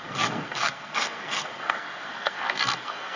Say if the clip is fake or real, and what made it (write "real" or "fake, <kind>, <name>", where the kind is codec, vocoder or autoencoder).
fake, codec, SNAC